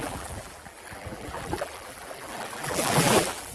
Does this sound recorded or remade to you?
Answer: remade